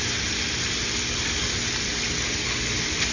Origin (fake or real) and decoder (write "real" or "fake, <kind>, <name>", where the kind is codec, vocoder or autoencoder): real